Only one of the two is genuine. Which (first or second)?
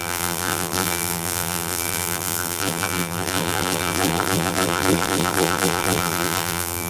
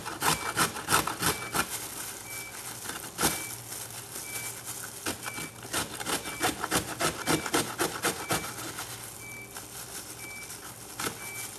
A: second